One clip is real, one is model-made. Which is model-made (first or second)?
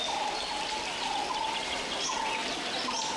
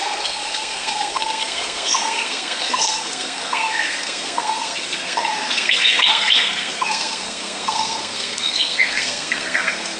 second